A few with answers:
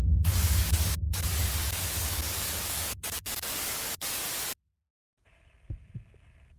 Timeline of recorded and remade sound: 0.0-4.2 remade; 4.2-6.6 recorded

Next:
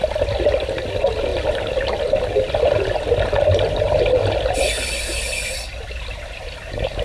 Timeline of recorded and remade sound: 0.0-7.0 recorded

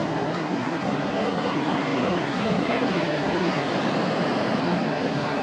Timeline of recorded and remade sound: 0.0-3.7 remade; 3.7-4.6 recorded; 4.6-5.4 remade